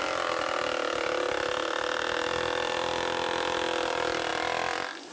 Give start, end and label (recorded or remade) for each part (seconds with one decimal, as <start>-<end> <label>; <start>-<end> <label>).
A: 0.0-2.3 recorded; 2.3-2.9 remade; 2.9-4.3 recorded; 4.3-5.1 remade